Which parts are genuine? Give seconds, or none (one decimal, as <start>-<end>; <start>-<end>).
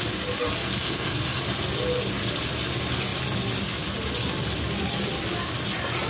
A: 0.0-0.6; 1.4-6.1